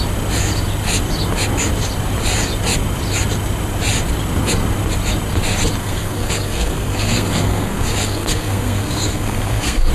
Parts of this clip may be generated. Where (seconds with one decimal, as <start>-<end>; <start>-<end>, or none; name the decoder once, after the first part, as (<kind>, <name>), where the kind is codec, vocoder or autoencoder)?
5.8-9.9 (codec, SNAC)